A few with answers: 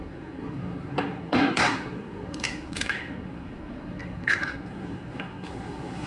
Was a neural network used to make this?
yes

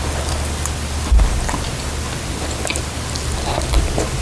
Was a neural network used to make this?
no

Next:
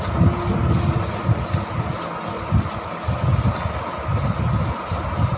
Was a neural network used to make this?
no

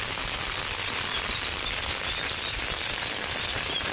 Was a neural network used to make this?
no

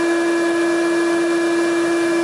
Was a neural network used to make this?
no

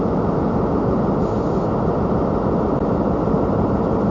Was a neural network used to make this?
yes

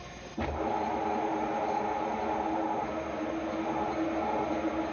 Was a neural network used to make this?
no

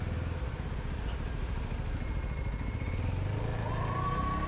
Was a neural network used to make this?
no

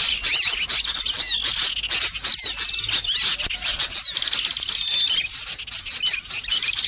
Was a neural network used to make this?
no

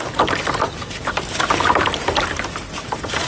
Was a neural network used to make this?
no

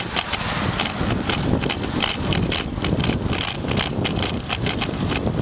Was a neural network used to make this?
no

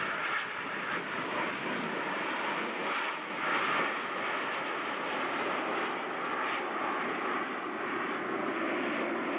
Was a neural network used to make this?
no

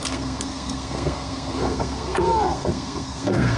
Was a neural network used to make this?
yes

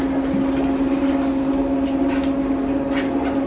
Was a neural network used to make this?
no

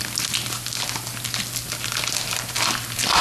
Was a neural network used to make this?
no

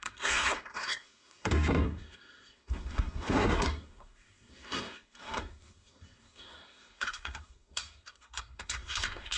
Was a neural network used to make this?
yes